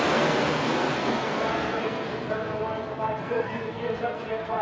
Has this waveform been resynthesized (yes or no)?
yes